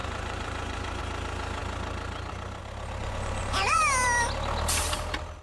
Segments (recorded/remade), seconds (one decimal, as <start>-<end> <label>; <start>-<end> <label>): 0.0-1.0 remade; 1.0-3.0 recorded; 3.0-3.8 remade; 3.8-5.4 recorded